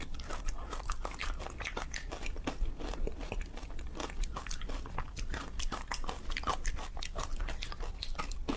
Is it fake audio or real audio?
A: fake